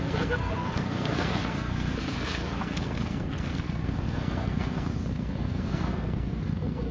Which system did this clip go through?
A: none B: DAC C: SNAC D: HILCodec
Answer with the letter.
C